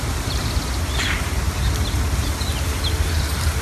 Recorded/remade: recorded